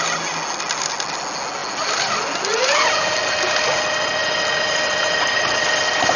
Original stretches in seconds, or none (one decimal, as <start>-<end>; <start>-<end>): 0.0-6.2